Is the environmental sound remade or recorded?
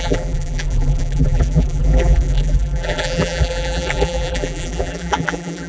remade